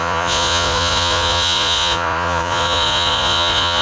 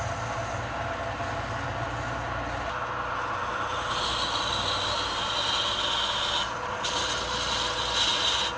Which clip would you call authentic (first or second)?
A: second